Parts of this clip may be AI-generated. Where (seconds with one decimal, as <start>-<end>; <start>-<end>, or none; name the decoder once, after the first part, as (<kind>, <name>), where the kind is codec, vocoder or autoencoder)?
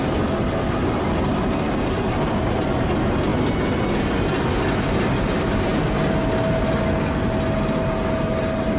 none